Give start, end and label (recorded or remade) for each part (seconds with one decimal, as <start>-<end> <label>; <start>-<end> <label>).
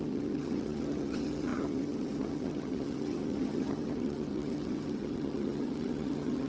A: 0.0-6.5 remade